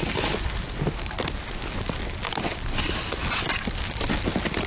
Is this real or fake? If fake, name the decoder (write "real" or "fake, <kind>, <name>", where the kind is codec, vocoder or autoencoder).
real